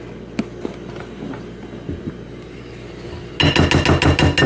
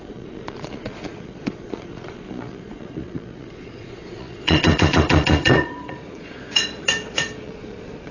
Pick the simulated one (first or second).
second